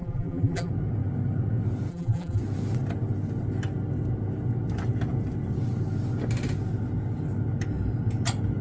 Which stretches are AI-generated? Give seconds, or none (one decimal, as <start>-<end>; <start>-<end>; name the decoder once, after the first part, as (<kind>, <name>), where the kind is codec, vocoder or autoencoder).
0.0-0.7 (vocoder, BigVGAN v2); 1.9-2.4